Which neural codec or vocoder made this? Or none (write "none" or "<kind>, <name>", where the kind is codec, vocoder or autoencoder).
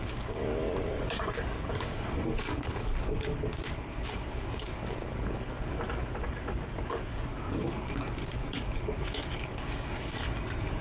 codec, DAC